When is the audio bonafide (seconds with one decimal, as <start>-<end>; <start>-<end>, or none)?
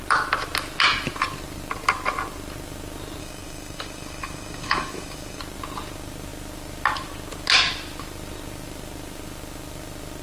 0.0-3.2; 5.4-10.2